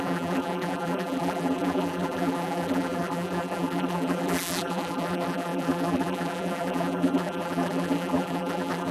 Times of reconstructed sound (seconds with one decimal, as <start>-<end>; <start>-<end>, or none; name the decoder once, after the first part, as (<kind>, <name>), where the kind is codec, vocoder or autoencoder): 0.0-8.9 (vocoder, BigVGAN v2)